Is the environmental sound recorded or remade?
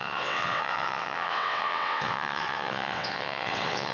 remade